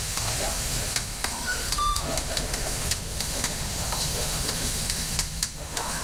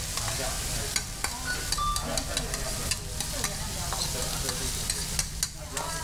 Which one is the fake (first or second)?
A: first